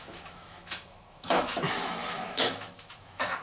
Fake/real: fake